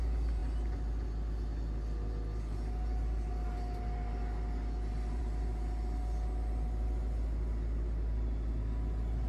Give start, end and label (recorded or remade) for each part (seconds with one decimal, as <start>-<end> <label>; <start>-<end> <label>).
0.0-9.3 recorded